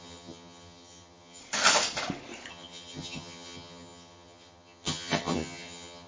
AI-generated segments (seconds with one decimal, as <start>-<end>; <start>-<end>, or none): 0.0-1.4; 2.5-6.1